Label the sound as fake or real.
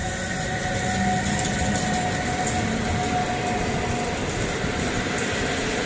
real